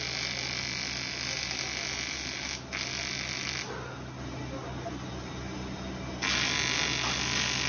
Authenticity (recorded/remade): recorded